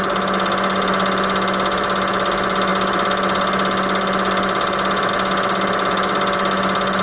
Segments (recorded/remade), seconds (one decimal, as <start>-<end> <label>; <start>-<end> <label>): 0.0-7.0 recorded

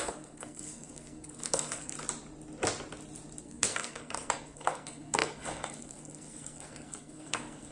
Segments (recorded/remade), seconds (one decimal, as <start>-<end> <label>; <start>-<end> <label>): 0.0-1.9 remade; 1.9-3.4 recorded; 3.4-7.7 remade

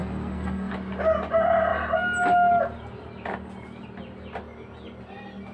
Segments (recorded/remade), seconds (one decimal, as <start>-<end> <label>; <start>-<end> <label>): 0.0-0.7 remade; 0.7-5.5 recorded

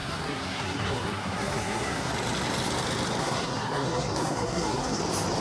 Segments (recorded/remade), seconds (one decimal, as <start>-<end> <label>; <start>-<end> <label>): 0.0-2.1 remade; 2.1-3.2 recorded; 3.2-5.0 remade; 5.0-5.4 recorded

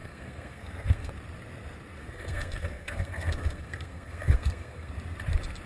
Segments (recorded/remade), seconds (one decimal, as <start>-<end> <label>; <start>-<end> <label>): 0.0-1.1 remade; 1.1-2.0 recorded; 2.0-4.9 remade; 4.9-5.7 recorded

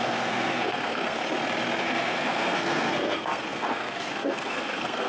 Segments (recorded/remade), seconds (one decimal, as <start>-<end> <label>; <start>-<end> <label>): 0.0-1.2 remade; 1.2-1.8 recorded; 1.8-5.1 remade

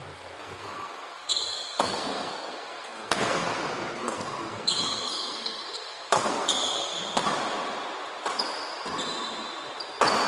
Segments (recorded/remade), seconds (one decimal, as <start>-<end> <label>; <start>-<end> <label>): 0.0-7.0 remade; 7.0-10.3 recorded